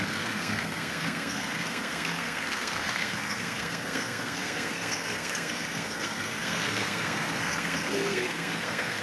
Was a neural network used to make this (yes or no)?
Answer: yes